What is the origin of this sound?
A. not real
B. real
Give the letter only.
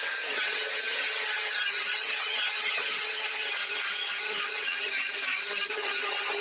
A